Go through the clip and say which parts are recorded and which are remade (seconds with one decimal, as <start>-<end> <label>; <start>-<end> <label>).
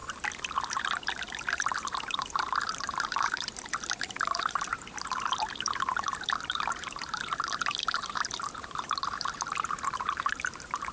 0.0-0.7 recorded; 0.7-10.9 remade